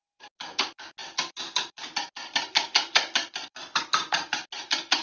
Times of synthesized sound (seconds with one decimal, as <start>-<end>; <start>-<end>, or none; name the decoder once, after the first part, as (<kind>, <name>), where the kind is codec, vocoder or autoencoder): 1.0-3.8 (vocoder, BigVGAN v2)